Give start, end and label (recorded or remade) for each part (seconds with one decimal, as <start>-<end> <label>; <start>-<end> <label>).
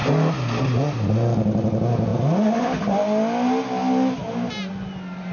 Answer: 0.0-5.3 recorded